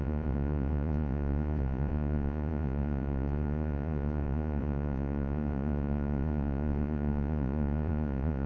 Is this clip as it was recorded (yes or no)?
no